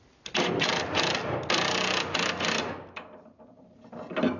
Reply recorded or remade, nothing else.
recorded